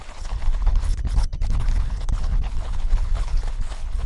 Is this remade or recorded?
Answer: remade